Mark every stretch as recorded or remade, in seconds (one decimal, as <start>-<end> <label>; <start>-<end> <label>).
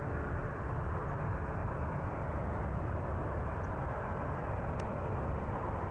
0.0-1.6 recorded; 1.6-2.2 remade; 2.2-5.9 recorded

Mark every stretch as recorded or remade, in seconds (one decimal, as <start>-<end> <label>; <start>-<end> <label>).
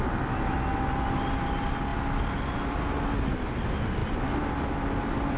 0.0-5.4 recorded